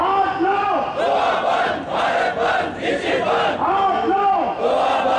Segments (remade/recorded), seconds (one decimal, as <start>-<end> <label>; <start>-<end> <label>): 0.0-5.2 recorded